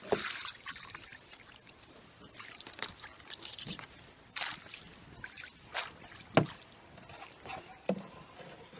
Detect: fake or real real